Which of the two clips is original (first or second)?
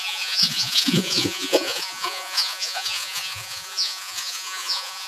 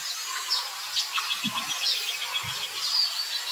second